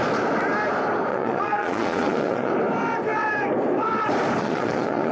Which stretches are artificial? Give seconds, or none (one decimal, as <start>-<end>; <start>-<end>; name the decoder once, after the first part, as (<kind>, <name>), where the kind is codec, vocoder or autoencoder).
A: 1.1-2.5 (vocoder, Vocos); 4.4-5.1